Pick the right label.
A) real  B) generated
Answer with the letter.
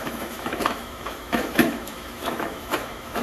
B